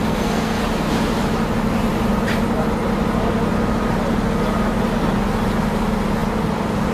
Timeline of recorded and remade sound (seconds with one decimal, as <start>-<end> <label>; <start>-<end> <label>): 0.0-0.6 remade; 0.6-6.9 recorded